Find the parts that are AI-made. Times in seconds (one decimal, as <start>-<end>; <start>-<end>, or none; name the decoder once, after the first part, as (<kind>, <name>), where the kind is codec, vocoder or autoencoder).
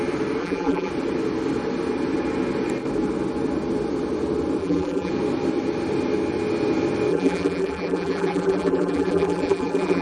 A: 0.4-0.9 (vocoder, BigVGAN v2); 4.6-5.1; 7.1-10.0